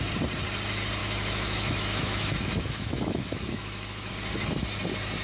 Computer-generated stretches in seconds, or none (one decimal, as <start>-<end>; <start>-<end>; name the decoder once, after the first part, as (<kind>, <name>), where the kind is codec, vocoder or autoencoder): 1.0-4.1 (autoencoder, DAC-VAE)